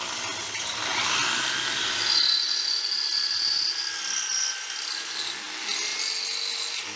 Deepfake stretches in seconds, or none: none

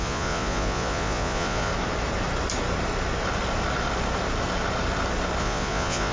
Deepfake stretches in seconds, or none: 0.0-1.7 (vocoder, Vocos); 5.4-6.1